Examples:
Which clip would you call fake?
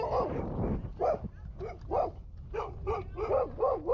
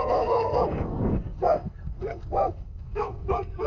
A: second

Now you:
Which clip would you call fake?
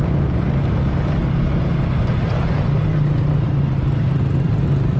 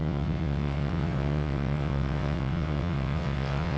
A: second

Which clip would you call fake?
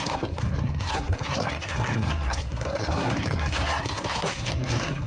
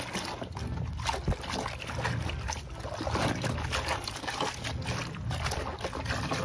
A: first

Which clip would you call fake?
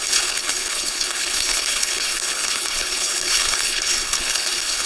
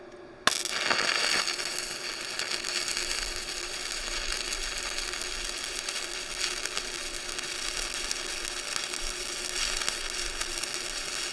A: first